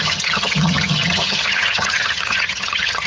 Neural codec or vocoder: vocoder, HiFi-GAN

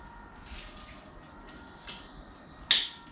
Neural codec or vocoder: none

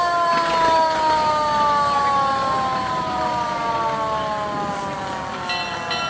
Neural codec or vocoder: none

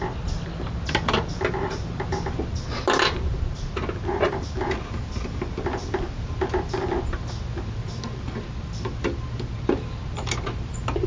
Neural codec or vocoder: none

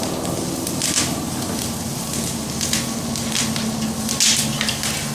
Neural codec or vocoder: none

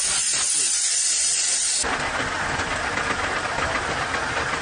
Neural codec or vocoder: none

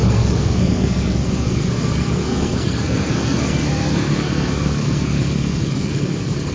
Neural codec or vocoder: codec, SNAC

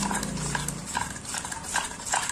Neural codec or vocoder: vocoder, BigVGAN v2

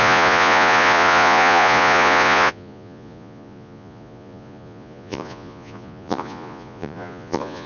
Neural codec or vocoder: vocoder, Vocos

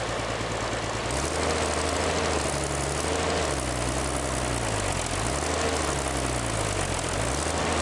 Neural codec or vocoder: none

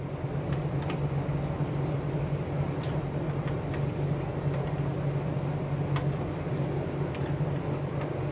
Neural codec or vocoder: none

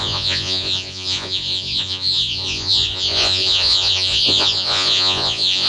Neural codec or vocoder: vocoder, Vocos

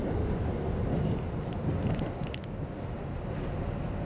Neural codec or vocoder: none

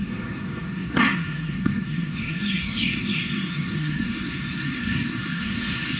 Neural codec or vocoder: codec, SNAC